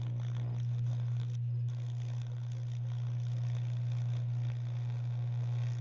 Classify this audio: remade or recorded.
recorded